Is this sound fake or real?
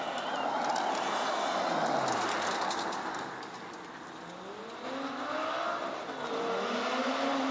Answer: real